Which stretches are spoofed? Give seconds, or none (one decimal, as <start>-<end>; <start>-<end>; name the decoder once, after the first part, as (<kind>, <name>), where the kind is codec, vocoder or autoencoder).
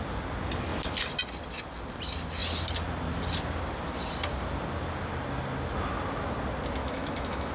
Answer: 6.8-7.5 (autoencoder, DAC-VAE)